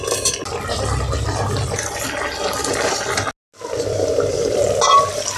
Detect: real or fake real